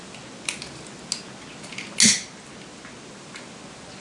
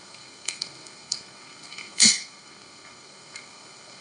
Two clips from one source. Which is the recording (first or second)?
first